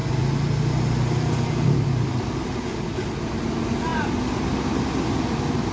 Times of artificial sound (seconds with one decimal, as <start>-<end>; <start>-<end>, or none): none